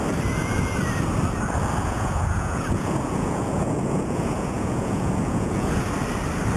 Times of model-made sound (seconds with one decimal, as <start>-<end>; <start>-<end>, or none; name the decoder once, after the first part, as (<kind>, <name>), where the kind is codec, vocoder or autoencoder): 1.8-5.8 (vocoder, Vocos)